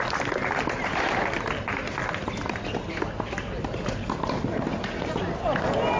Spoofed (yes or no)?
no